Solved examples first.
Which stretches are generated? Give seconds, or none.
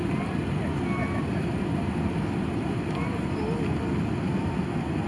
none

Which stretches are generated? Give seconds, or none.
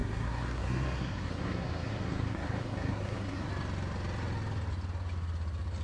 0.0-3.5 (codec, SNAC)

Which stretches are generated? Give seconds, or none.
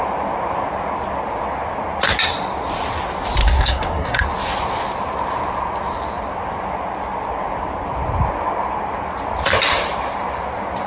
3.4-4.2 (codec, SNAC)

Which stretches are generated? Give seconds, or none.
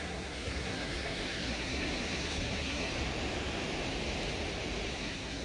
0.0-2.9 (codec, SNAC); 4.9-5.4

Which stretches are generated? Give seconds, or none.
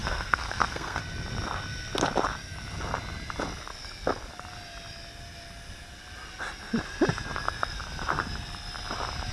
0.0-1.0 (codec, SNAC)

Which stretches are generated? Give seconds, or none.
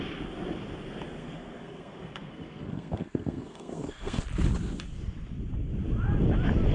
1.2-4.2 (codec, SNAC)